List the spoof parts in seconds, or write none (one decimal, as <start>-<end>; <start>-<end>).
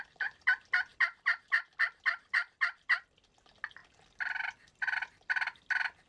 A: 0.9-1.7; 3.8-6.1